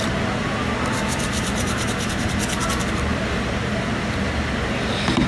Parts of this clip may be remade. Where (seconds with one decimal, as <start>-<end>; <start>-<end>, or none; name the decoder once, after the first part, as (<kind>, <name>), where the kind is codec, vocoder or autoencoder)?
0.0-5.3 (vocoder, BigVGAN v2)